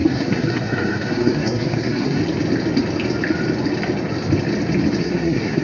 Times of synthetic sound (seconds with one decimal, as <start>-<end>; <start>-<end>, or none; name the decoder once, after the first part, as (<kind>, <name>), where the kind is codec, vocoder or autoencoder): 0.0-2.2 (codec, SNAC); 5.0-5.6